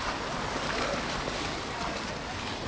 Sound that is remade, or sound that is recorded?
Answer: recorded